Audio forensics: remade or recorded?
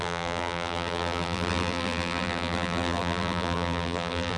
remade